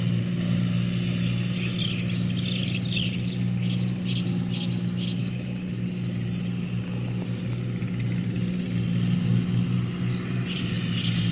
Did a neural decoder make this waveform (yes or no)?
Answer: no